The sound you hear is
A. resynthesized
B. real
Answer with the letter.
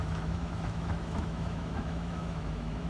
A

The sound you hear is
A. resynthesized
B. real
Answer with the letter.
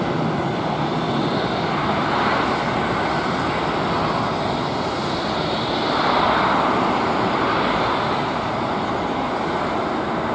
B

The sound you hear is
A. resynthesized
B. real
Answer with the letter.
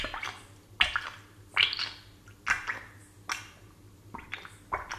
B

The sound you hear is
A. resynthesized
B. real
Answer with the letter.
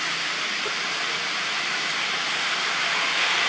B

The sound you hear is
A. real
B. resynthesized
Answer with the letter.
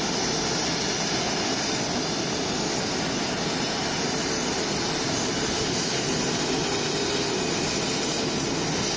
A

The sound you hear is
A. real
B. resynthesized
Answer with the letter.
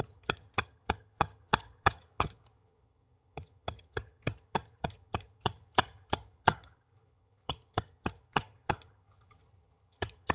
B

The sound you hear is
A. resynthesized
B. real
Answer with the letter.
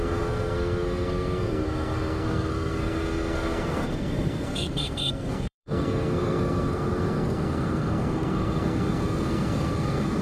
A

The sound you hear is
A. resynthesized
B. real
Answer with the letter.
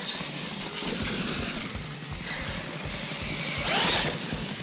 B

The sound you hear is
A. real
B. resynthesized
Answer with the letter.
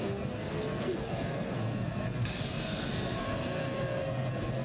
B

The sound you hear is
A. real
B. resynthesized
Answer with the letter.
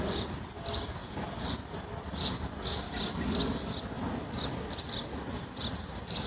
A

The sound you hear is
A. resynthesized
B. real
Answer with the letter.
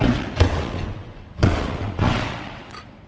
A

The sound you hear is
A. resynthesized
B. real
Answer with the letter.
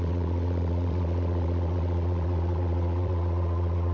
A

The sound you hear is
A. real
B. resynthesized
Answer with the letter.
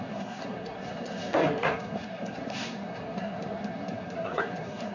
B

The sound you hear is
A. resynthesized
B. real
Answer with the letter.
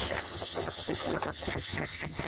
A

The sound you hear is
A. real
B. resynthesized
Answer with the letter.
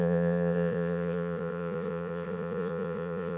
B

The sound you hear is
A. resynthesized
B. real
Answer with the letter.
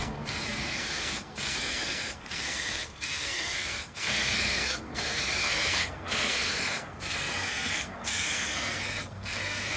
A